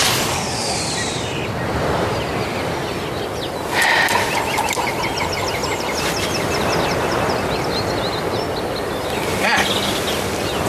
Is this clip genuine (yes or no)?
yes